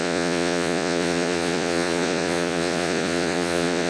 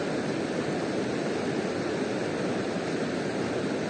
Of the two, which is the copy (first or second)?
first